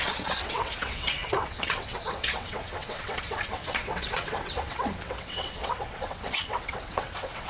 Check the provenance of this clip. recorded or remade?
remade